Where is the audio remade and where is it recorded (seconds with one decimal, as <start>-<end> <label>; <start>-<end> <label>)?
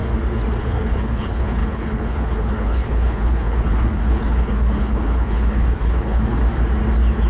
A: 0.0-0.6 recorded; 0.6-6.4 remade; 6.4-7.3 recorded